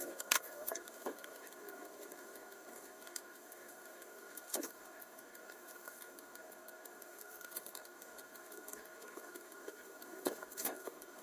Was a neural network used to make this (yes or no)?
yes